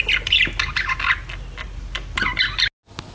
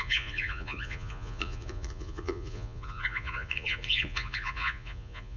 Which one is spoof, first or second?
second